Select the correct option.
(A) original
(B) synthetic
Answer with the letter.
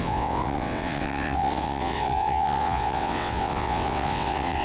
B